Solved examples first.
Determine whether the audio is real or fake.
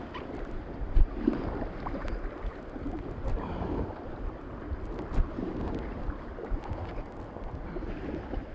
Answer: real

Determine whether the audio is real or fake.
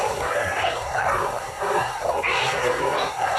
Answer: fake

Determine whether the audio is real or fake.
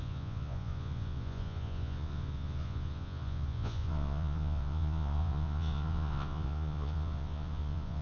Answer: fake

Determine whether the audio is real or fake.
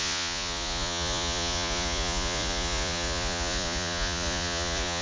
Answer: fake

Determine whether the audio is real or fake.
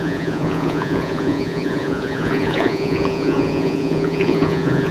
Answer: fake